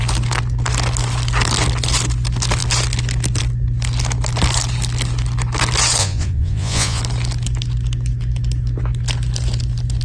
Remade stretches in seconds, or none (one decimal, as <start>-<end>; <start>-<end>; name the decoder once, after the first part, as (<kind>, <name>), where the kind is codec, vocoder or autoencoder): 6.0-7.0 (vocoder, Vocos)